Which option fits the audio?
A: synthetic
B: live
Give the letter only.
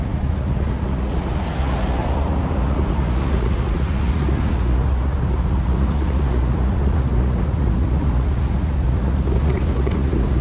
A